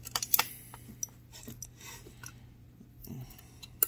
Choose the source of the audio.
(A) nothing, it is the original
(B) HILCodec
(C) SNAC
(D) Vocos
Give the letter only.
A